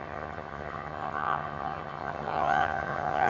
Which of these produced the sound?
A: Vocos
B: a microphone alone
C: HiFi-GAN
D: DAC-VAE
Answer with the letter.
C